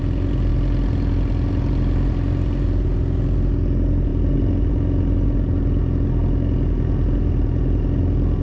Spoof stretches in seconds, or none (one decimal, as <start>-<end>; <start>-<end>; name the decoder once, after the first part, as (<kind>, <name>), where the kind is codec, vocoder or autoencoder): none